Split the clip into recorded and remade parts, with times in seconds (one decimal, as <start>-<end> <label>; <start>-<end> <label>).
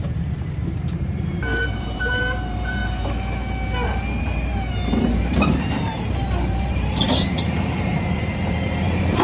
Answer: 0.0-2.8 remade; 2.8-4.2 recorded; 4.2-9.2 remade